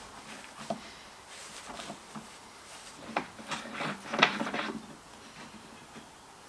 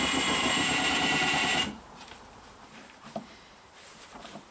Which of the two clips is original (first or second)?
first